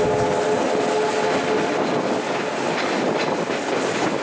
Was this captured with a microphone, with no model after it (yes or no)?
yes